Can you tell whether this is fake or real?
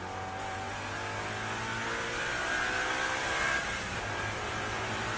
real